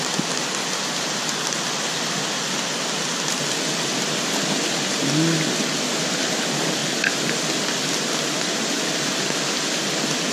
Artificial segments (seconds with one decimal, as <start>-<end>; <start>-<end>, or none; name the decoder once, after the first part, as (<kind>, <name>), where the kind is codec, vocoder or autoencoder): none